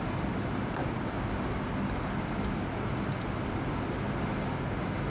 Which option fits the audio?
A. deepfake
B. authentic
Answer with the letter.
B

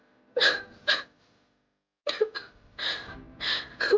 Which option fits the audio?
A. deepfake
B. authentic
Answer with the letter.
B